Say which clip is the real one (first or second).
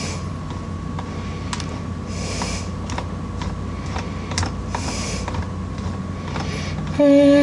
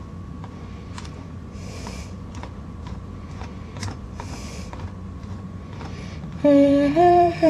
first